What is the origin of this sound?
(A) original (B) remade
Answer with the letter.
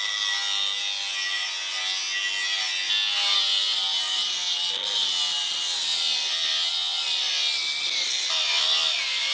A